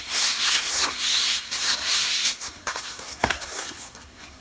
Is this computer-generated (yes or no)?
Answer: yes